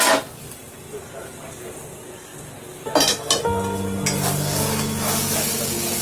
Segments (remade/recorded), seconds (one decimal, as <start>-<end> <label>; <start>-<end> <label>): 0.0-6.0 recorded